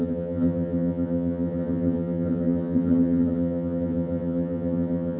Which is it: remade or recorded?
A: remade